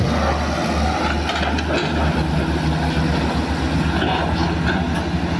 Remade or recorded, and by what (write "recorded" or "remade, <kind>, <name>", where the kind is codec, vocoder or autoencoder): recorded